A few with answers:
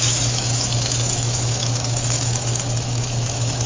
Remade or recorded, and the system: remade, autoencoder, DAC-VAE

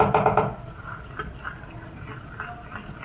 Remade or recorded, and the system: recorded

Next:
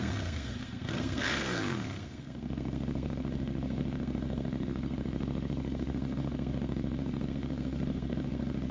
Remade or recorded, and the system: remade, codec, SNAC